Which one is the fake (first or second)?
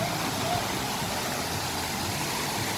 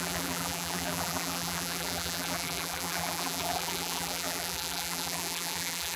second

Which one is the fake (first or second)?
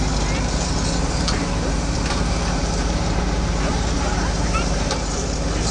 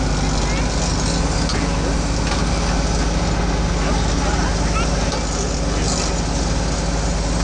first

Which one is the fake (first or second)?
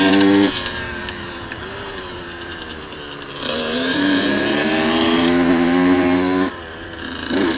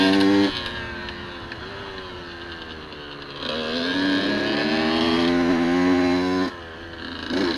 first